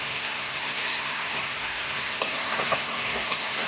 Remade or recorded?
remade